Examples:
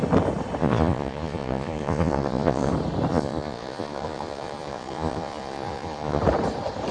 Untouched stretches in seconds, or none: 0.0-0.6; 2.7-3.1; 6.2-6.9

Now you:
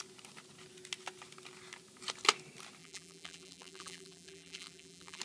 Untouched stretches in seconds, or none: 0.0-2.8

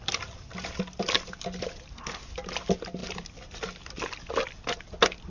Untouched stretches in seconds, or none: 0.0-5.3

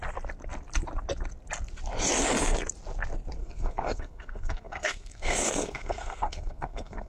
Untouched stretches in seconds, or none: 0.0-3.4

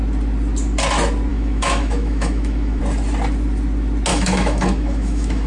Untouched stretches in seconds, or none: 0.0-1.3; 2.8-4.1

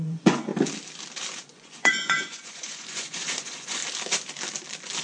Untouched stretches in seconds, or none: 0.5-1.4; 3.8-5.0

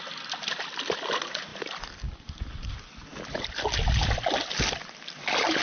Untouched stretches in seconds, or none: 0.0-5.6